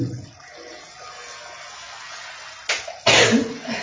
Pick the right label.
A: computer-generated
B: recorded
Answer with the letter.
B